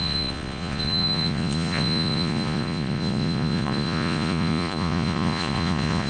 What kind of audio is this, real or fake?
fake